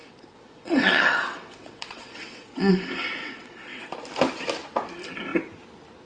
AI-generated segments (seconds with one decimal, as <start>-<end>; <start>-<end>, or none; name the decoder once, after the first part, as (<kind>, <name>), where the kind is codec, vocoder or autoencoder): 0.0-2.7 (vocoder, WaveNeXt); 3.2-3.8